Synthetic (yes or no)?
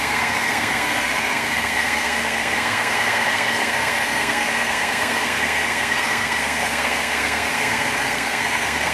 yes